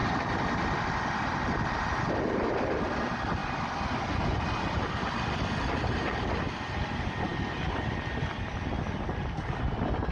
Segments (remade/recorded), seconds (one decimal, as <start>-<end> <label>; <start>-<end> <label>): 0.0-10.1 recorded